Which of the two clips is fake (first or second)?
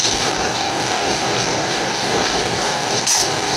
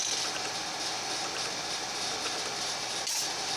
first